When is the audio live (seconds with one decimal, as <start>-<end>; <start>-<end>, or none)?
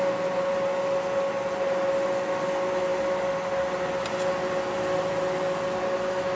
0.0-6.4